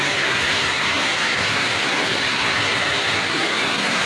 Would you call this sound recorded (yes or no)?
no